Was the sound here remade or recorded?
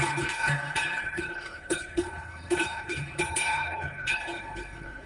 remade